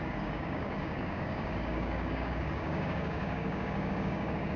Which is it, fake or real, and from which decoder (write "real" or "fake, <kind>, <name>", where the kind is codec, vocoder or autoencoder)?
fake, codec, DAC